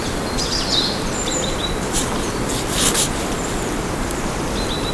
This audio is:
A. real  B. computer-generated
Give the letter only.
A